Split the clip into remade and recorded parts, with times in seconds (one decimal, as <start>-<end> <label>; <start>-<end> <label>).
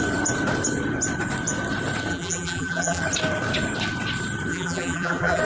0.0-2.1 recorded; 2.1-3.0 remade; 3.0-4.5 recorded; 4.5-5.4 remade